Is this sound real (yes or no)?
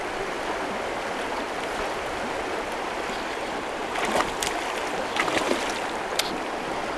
yes